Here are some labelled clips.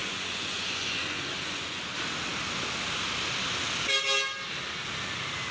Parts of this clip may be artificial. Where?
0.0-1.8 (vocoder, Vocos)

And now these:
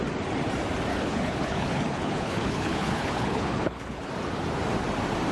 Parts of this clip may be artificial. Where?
0.9-4.1 (codec, HILCodec)

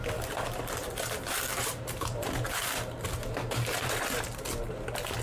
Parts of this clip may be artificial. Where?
0.8-3.9 (vocoder, BigVGAN v2)